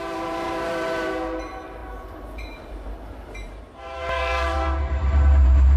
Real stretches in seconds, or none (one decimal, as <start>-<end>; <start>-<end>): none